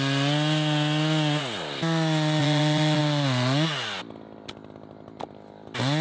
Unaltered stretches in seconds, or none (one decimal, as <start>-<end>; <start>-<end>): 0.0-2.4; 3.0-6.0